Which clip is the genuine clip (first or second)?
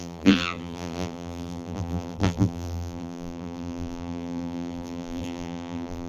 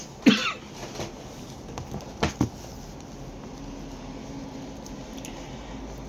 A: second